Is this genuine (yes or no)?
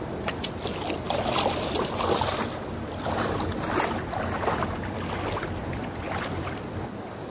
yes